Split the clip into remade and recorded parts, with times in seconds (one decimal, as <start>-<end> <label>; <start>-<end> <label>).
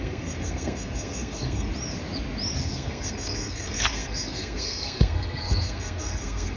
0.0-1.7 remade; 1.7-2.6 recorded; 2.6-6.6 remade